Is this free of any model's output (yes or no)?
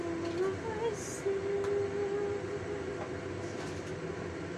yes